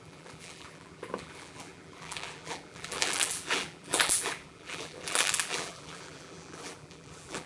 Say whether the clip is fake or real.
fake